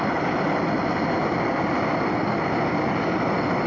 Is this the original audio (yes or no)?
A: yes